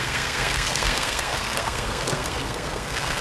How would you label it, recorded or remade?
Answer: remade